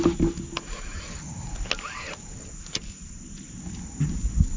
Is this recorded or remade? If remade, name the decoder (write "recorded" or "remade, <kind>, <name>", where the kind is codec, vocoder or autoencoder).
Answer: recorded